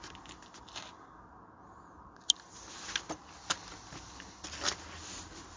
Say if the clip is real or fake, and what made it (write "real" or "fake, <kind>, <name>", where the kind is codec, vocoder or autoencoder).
real